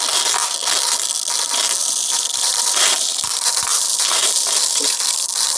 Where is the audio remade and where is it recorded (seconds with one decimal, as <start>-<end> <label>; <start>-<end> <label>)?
0.0-1.8 recorded; 1.8-5.6 remade